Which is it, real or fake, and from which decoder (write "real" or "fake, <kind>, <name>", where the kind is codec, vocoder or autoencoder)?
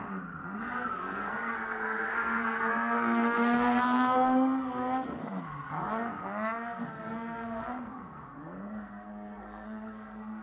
fake, codec, SNAC